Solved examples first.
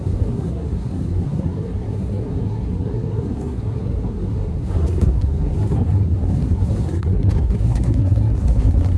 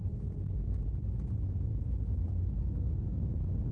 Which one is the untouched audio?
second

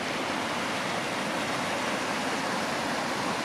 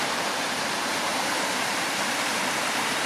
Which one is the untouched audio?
first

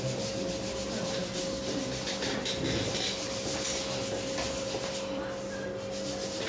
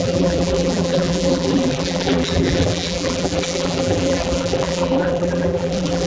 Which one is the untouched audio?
first